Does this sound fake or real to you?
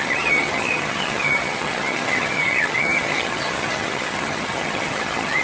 fake